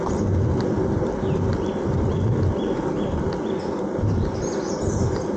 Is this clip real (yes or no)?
yes